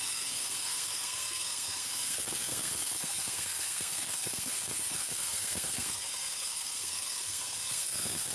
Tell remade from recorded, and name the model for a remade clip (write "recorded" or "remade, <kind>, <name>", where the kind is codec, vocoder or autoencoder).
remade, codec, SNAC